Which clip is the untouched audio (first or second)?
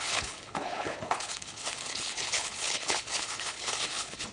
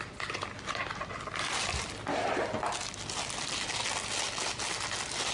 second